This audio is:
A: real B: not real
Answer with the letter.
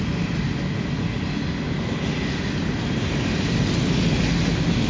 A